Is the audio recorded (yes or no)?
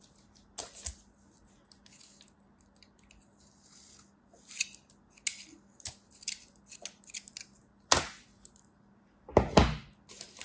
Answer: yes